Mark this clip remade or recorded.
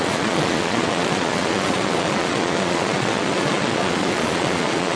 remade